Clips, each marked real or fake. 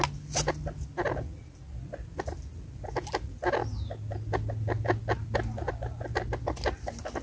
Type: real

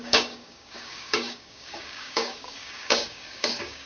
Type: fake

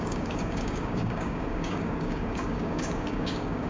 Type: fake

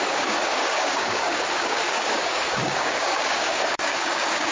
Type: fake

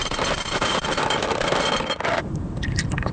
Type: real